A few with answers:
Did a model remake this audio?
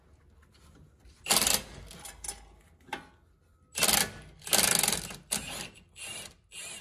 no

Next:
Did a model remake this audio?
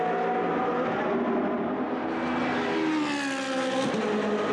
no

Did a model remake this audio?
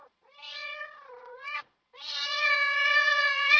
yes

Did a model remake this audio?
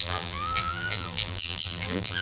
yes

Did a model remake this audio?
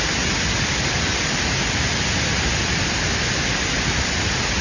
no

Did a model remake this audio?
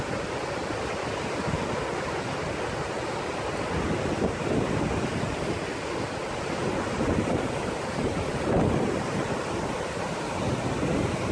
no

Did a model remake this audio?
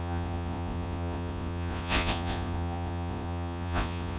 yes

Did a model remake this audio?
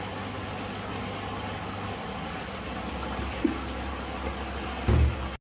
no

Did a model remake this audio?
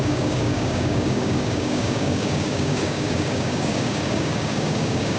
yes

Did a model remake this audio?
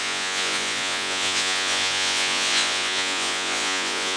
yes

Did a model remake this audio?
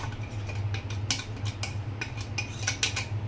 no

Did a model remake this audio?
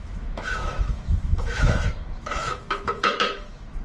yes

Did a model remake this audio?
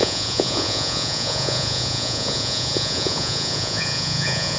yes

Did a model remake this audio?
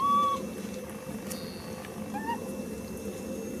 no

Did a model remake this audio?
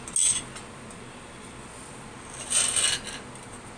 no